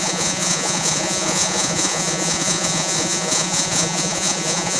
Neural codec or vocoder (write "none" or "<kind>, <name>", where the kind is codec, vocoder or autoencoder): vocoder, Vocos